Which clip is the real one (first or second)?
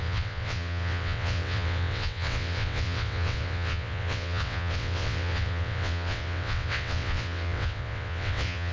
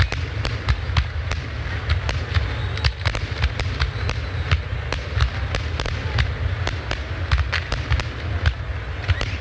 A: second